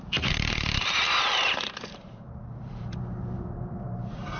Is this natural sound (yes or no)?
no